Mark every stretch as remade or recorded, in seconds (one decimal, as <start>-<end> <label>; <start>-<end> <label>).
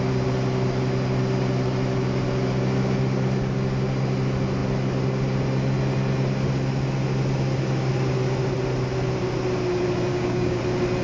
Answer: 0.0-10.1 recorded; 10.1-10.6 remade; 10.6-11.0 recorded